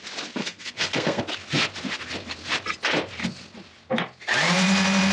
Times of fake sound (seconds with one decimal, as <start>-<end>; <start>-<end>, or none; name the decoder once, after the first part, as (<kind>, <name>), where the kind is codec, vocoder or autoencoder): 0.4-1.2 (codec, SNAC)